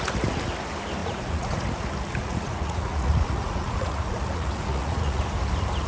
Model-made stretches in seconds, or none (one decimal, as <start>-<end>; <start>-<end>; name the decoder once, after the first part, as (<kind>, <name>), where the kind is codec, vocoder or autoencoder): 1.0-1.6 (vocoder, Vocos); 2.2-5.2